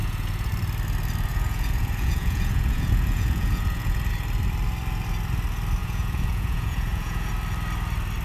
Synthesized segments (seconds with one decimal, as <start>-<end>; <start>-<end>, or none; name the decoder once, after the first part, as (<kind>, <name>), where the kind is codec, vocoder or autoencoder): 0.0-0.5 (vocoder, Vocos); 1.3-4.1; 5.8-7.3